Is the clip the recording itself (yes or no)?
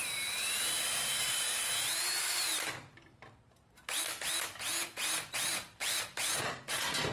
no